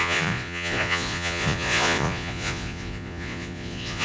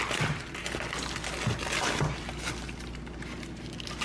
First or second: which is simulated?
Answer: first